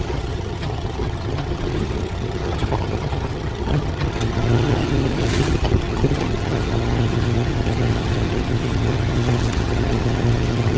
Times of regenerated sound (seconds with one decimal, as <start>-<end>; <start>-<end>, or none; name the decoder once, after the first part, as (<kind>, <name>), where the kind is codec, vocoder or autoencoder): 0.0-10.8 (vocoder, HiFi-GAN)